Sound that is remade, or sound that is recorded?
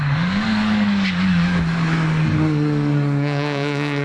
remade